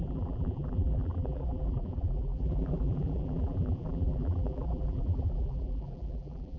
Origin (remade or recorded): remade